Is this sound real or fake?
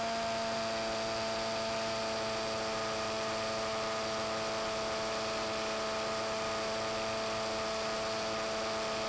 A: real